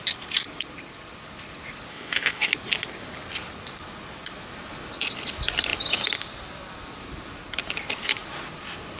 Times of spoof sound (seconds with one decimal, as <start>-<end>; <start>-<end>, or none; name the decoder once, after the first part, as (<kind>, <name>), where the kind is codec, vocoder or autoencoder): 1.9-2.5 (codec, ZipCodec)

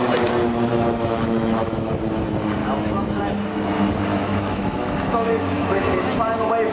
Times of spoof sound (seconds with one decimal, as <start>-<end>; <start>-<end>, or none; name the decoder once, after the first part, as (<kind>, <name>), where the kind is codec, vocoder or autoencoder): 0.7-1.9 (autoencoder, DAC-VAE); 2.6-3.2; 4.1-5.8

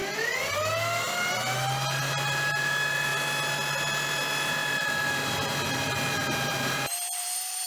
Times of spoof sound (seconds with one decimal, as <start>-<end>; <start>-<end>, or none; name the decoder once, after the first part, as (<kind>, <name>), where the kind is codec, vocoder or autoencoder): 4.6-7.7 (vocoder, BigVGAN v2)

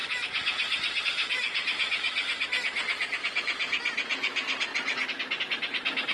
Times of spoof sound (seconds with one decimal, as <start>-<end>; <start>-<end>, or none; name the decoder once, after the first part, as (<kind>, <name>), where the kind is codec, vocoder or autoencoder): 0.0-1.0 (vocoder, BigVGAN v2); 2.8-3.4

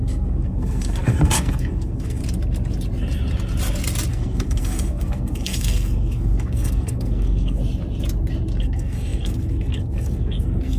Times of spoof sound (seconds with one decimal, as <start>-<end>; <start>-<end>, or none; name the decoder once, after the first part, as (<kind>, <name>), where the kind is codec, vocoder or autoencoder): 0.0-2.2 (codec, SNAC); 4.1-7.6; 8.6-10.8

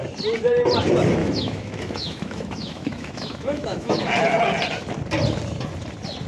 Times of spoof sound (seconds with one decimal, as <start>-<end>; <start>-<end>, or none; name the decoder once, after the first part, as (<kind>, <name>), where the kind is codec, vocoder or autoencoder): 1.2-4.0 (autoencoder, DAC-VAE)

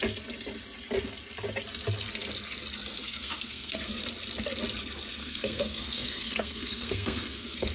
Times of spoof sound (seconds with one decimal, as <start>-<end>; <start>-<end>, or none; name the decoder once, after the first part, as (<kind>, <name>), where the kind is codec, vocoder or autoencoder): 3.0-4.0 (codec, SNAC); 5.2-7.7